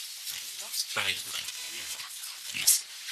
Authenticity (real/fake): real